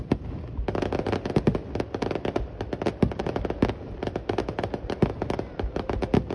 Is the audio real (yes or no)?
yes